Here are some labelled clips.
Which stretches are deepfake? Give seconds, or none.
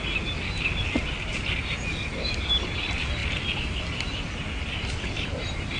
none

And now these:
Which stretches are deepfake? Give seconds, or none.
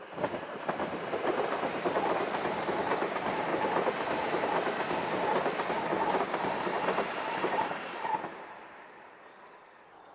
0.0-3.5; 6.2-10.1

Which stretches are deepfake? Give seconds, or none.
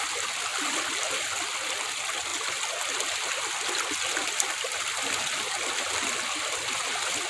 none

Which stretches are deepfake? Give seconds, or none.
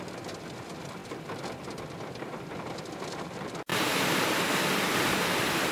none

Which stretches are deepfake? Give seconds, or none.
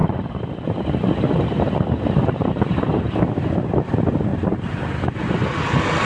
0.0-3.7; 4.3-5.0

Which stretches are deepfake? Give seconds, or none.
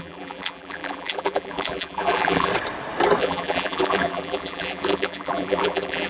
0.0-2.5; 3.2-6.1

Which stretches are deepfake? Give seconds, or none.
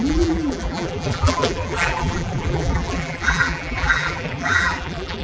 0.0-5.2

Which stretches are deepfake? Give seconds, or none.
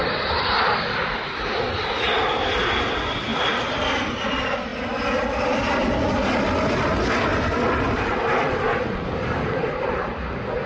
3.3-3.9; 7.3-9.5